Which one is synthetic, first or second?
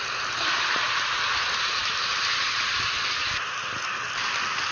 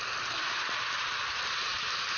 second